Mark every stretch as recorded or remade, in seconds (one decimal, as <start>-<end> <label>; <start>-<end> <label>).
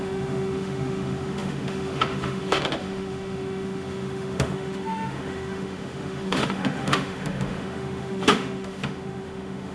0.0-9.7 remade